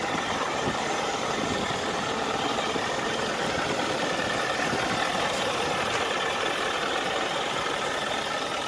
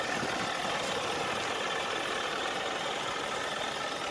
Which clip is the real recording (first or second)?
second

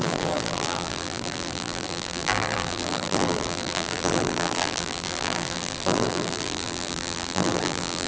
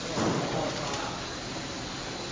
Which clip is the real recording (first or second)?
second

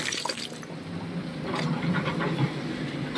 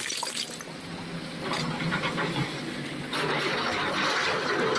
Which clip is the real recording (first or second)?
second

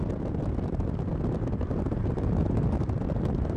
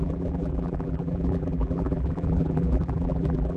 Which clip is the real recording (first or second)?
first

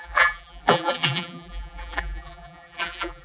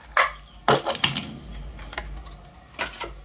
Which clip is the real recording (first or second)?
second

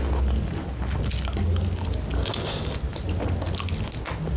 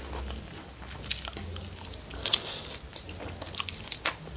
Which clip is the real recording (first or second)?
first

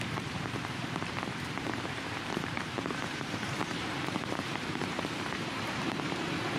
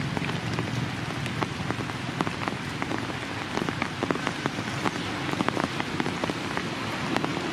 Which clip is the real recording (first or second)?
second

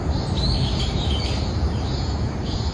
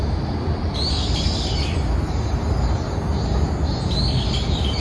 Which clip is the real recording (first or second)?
second